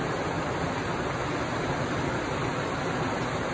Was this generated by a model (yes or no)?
no